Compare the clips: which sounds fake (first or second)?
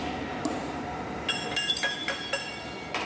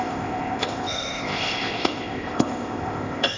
second